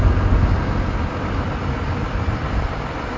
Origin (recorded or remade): recorded